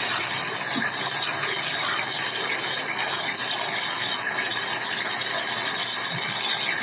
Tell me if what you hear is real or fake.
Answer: real